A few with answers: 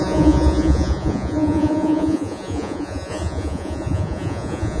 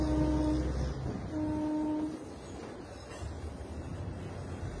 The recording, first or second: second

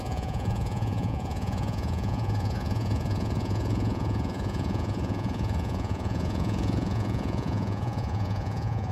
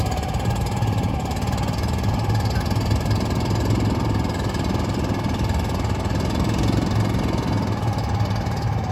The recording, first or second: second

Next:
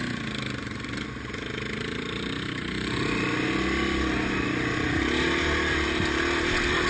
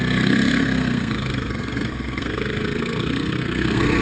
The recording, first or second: first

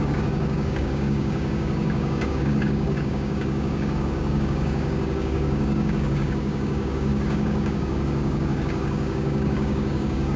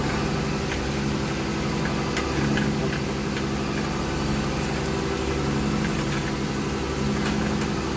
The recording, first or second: second